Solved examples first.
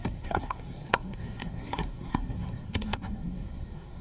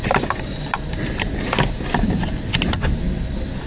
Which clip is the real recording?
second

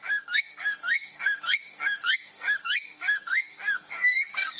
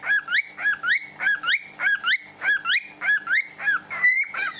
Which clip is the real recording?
second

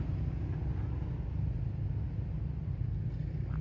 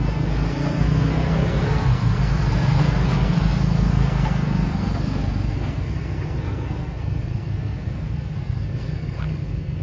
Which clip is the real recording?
first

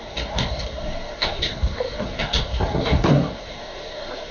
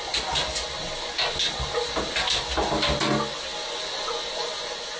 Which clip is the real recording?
second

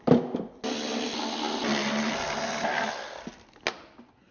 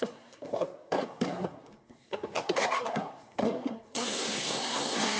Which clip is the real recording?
first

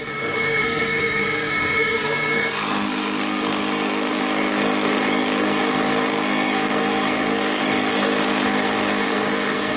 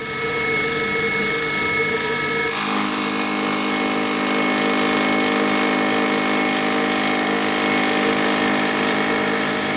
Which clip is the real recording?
second